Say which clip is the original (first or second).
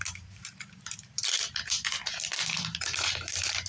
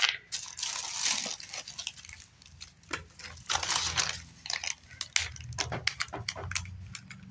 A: second